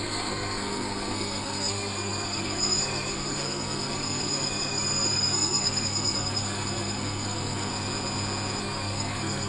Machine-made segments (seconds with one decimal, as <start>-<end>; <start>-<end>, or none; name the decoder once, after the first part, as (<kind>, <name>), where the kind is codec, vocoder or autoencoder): 0.0-7.7 (codec, SNAC); 8.6-9.5